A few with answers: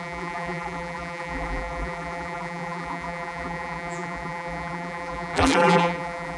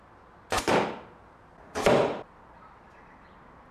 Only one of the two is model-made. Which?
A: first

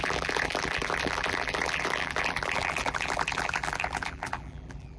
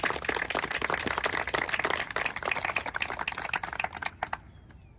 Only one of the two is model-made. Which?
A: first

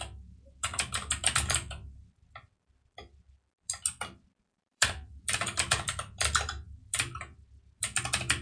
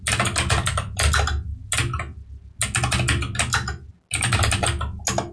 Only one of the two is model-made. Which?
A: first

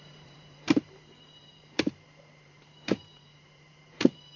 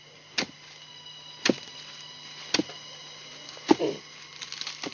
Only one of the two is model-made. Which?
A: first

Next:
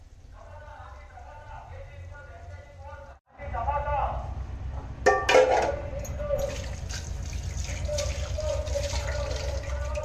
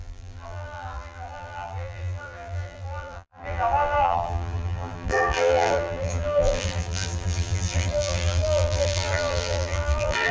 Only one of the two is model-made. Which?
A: second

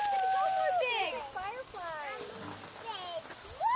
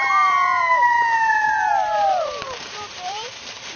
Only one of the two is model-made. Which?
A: second